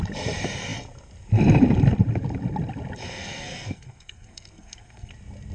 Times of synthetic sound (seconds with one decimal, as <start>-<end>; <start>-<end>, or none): 3.0-5.1